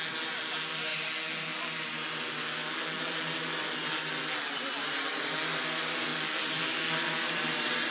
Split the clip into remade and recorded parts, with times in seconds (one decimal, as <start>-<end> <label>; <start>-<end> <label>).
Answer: 0.0-7.9 recorded